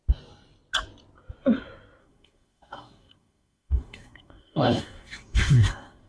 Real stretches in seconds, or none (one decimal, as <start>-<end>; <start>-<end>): 0.0-2.0